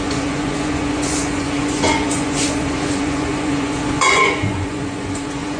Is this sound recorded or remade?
remade